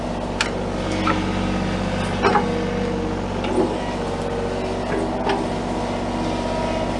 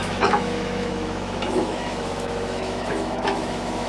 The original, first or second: first